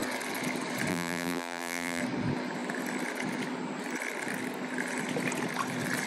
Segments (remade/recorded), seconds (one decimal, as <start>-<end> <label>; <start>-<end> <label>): 0.0-0.9 recorded; 0.9-2.0 remade; 2.0-6.1 recorded